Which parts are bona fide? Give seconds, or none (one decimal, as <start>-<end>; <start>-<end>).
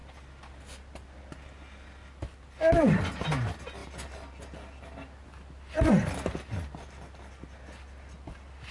0.0-8.7